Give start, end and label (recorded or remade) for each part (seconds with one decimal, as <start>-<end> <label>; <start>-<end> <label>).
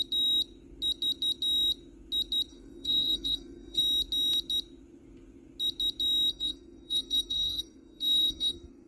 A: 0.0-2.5 recorded; 2.5-3.8 remade; 3.8-6.3 recorded; 6.3-8.9 remade